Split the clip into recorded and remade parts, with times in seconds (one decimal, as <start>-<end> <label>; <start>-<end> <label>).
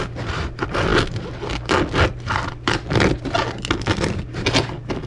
0.0-5.1 recorded